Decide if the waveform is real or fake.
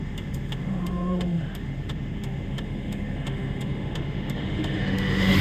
fake